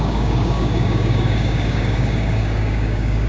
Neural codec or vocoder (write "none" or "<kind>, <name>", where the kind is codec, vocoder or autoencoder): codec, DAC